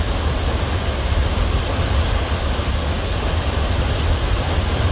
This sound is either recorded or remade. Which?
recorded